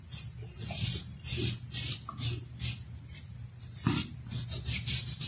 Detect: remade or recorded recorded